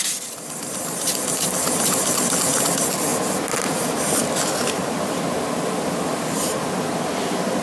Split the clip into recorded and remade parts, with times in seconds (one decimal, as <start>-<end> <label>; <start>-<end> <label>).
0.0-7.6 remade